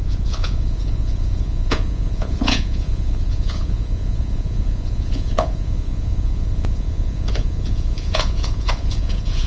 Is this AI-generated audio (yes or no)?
yes